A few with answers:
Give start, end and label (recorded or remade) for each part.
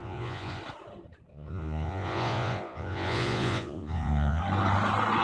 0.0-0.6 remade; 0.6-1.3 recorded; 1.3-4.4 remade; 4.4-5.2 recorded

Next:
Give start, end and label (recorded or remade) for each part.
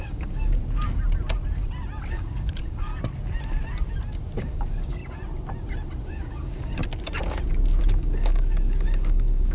0.0-0.6 remade; 0.6-2.1 recorded; 2.1-2.9 remade; 2.9-4.4 recorded; 4.4-5.0 remade; 5.0-6.0 recorded; 6.0-6.8 remade; 6.8-7.8 recorded; 7.8-9.5 remade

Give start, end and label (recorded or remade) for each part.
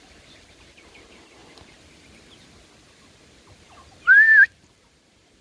0.0-1.4 remade; 1.4-4.6 recorded; 4.6-5.4 remade